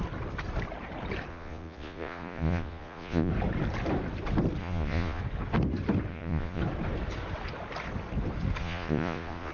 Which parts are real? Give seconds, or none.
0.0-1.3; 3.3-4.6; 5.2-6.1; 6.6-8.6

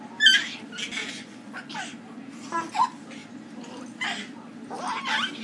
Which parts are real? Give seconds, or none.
0.0-1.0; 1.7-5.4

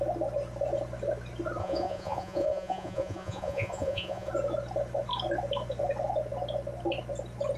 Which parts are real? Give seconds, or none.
0.0-1.6; 4.3-7.6

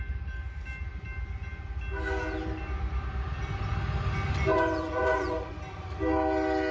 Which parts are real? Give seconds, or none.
0.0-4.5; 5.6-6.7

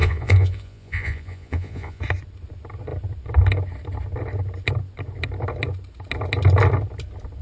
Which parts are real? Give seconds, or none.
2.0-7.4

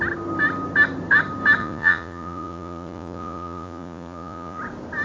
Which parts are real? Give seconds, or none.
0.0-1.6; 4.6-5.0